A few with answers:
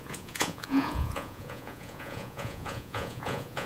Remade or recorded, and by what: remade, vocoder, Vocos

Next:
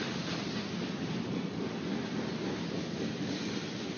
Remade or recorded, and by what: recorded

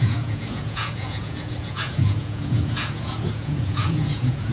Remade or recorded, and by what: remade, vocoder, Vocos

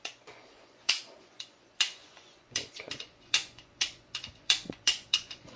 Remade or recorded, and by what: remade, vocoder, Vocos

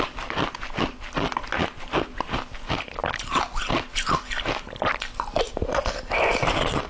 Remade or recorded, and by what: recorded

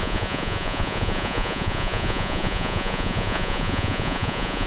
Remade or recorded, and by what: remade, vocoder, Vocos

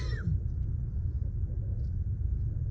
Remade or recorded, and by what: recorded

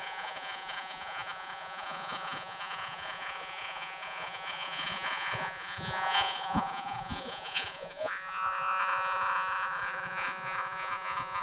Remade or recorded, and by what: remade, vocoder, Vocos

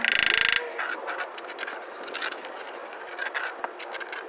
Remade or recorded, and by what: recorded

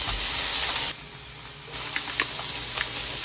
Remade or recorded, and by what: recorded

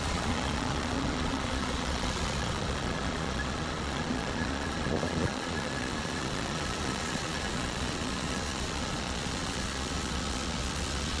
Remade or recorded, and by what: remade, vocoder, Vocos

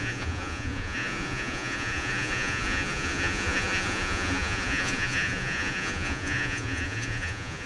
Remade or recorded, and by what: remade, vocoder, Vocos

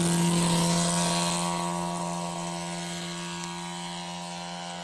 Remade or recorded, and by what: recorded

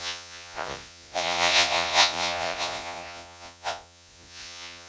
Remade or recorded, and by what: remade, vocoder, Vocos